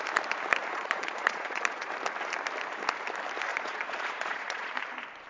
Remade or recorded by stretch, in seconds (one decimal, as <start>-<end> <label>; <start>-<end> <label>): 0.0-0.7 recorded; 0.7-1.9 remade; 1.9-3.5 recorded; 3.5-4.7 remade; 4.7-5.3 recorded